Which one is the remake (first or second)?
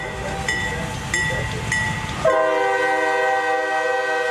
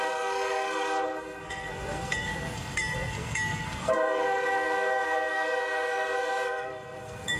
second